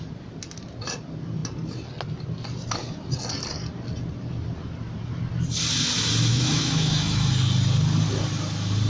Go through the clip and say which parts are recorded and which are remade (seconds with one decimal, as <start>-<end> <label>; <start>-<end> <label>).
0.0-6.3 recorded; 6.3-7.3 remade; 7.3-8.9 recorded